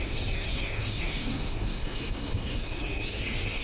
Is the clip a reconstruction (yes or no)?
yes